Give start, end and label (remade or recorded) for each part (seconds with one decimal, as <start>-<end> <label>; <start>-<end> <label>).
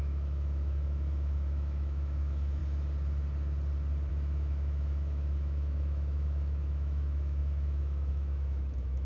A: 0.0-2.6 remade; 2.6-4.1 recorded; 4.1-9.1 remade